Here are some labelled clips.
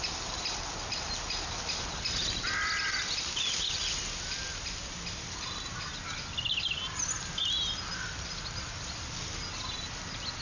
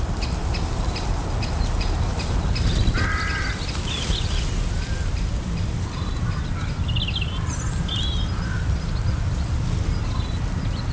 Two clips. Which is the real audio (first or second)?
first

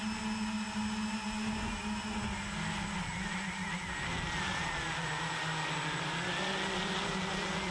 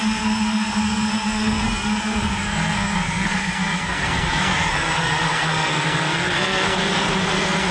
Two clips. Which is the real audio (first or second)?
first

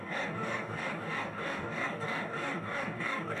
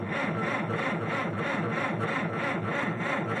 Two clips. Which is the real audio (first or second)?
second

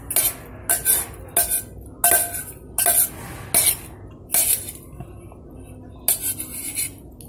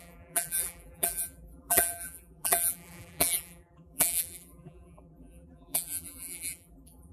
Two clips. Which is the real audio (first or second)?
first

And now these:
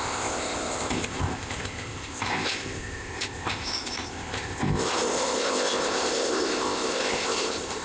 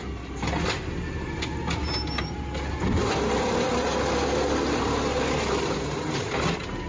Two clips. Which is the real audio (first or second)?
second